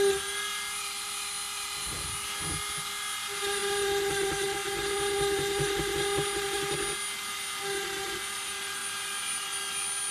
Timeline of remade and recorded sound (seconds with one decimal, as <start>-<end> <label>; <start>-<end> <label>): 0.0-10.1 recorded